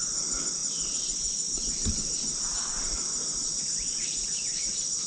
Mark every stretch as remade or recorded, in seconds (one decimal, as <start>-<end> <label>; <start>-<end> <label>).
0.0-5.1 recorded